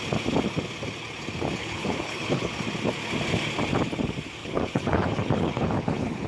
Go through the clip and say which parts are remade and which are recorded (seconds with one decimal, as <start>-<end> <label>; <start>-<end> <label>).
0.0-1.6 recorded; 1.6-2.5 remade; 2.5-4.4 recorded; 4.4-6.3 remade